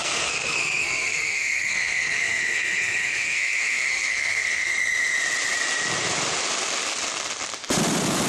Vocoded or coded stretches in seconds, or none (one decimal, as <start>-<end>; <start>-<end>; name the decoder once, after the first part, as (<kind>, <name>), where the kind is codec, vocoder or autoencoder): 0.0-4.7 (codec, SNAC)